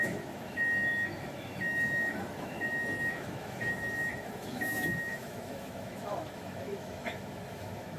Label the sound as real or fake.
fake